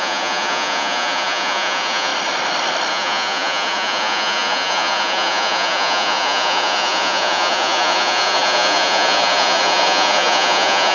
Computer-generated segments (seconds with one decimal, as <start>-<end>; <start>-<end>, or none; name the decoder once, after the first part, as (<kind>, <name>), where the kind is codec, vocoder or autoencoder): 0.0-2.1 (vocoder, Vocos); 2.9-10.9